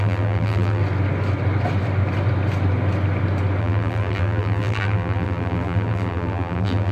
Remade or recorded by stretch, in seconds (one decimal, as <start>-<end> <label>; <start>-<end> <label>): 0.0-0.8 remade; 0.8-3.6 recorded; 3.6-6.9 remade

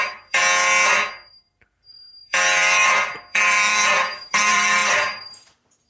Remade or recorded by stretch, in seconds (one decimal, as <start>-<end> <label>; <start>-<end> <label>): 0.0-0.4 remade; 0.4-1.1 recorded; 1.1-5.9 remade

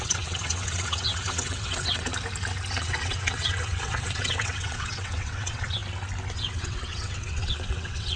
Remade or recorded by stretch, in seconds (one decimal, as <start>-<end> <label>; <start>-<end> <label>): 0.0-2.1 remade; 2.1-2.8 recorded; 2.8-5.8 remade; 5.8-6.3 recorded; 6.3-8.2 remade